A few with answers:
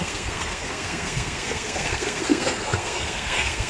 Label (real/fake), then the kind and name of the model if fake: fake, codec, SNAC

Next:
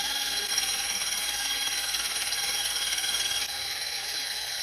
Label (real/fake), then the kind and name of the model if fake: fake, codec, SNAC